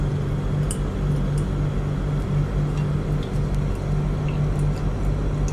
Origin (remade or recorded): recorded